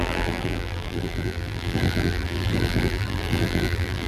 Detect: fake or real fake